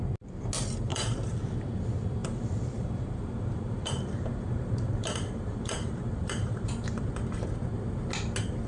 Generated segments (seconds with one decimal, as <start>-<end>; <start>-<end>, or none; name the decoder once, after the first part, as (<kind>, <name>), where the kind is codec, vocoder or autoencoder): 0.9-1.4 (vocoder, BigVGAN v2); 2.2-7.1